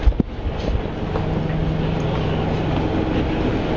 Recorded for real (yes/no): yes